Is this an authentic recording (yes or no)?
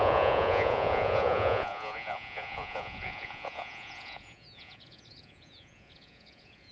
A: no